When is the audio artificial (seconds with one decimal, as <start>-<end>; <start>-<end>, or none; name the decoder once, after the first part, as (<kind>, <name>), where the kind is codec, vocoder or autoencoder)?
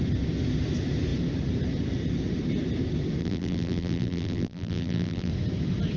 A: 3.2-5.3 (vocoder, BigVGAN v2)